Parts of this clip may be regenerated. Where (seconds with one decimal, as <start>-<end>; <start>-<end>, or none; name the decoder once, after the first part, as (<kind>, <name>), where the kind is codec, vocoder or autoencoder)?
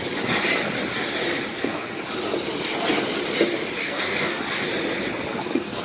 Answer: 1.5-2.0 (codec, SNAC); 3.8-4.4; 5.3-5.8